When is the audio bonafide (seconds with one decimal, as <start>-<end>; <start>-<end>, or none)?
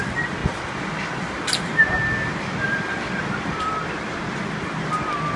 0.0-5.4